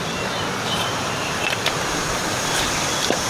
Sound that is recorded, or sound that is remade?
remade